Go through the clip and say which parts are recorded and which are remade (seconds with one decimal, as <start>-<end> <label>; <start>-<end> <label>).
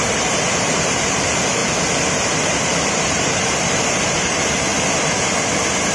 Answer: 0.0-1.6 remade; 1.6-2.9 recorded; 2.9-4.7 remade; 4.7-5.9 recorded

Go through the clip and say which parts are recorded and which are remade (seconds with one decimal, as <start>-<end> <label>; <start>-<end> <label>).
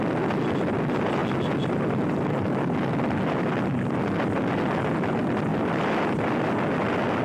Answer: 0.0-7.2 recorded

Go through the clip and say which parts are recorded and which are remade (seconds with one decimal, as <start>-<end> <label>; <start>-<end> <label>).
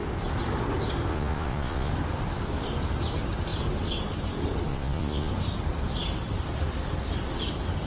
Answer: 0.0-1.1 recorded; 1.1-1.9 remade; 1.9-4.7 recorded; 4.7-5.3 remade; 5.3-7.9 recorded